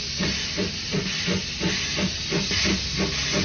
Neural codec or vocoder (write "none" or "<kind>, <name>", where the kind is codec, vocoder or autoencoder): none